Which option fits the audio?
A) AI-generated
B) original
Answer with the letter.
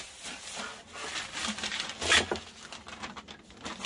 B